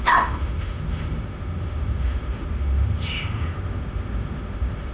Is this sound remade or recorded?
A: remade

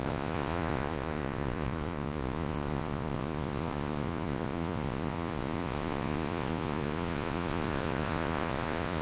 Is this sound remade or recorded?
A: remade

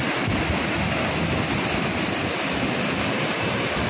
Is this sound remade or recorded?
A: recorded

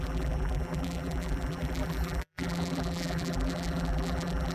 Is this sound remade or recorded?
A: remade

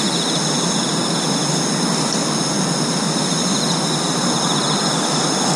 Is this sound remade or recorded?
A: recorded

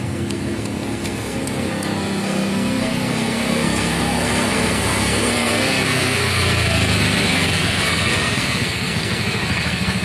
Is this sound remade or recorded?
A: remade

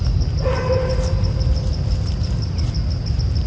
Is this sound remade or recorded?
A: recorded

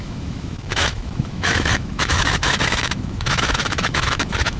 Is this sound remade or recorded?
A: remade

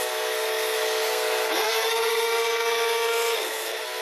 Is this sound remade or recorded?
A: remade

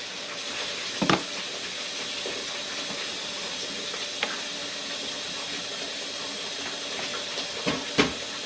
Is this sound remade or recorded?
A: recorded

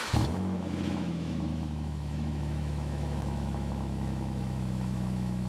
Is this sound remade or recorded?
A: remade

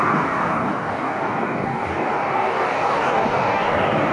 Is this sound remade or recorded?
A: remade